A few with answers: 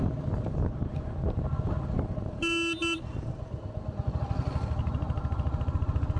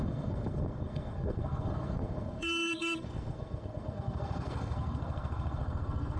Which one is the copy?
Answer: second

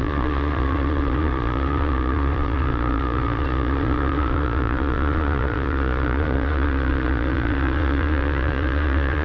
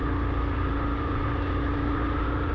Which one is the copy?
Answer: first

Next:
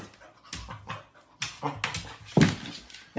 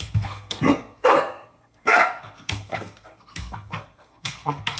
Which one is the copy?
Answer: second